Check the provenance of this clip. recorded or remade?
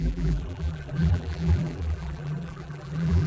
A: remade